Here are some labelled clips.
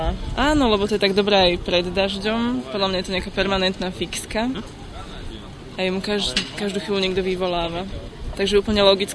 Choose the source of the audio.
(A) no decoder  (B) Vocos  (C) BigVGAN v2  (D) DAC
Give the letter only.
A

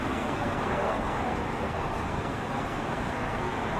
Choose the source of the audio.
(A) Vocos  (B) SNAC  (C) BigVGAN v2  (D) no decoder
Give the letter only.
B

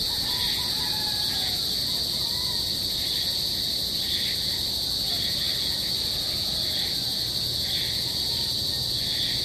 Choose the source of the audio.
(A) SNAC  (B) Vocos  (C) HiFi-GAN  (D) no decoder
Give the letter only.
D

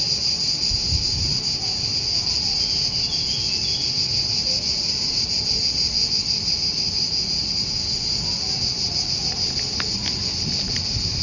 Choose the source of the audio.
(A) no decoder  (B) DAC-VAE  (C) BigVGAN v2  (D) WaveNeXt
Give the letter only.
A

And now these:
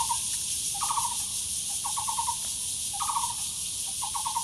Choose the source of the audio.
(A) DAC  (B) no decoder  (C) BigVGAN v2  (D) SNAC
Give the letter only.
B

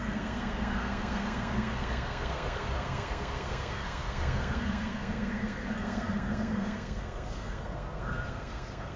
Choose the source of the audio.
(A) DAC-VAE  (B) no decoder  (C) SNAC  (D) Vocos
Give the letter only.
C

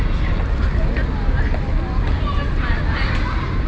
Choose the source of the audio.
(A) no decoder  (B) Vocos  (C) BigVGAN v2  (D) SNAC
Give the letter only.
A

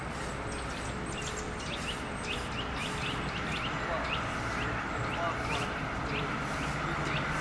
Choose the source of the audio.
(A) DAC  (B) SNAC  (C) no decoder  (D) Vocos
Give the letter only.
C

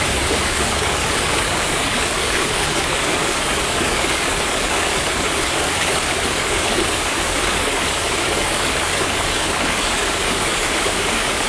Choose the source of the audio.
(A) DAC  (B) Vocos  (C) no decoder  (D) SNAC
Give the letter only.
A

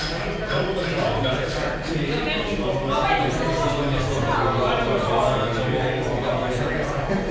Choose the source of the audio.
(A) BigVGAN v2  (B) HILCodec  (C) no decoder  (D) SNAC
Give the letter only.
C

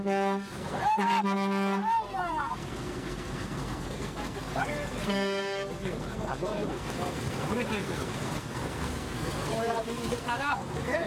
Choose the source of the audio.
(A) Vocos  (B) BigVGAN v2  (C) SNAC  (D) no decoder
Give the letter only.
C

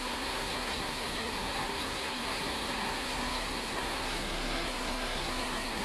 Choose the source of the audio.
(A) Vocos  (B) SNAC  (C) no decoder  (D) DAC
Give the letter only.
B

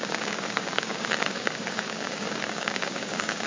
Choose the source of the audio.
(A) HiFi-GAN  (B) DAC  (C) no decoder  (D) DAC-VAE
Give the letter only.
B